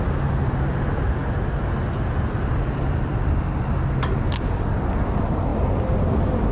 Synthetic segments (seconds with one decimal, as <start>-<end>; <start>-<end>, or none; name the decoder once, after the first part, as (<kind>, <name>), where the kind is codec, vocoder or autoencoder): none